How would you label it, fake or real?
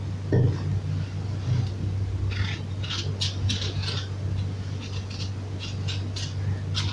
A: real